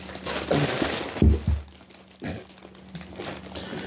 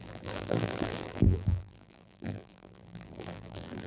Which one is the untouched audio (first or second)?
first